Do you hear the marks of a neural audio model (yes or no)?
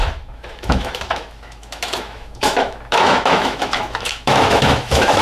yes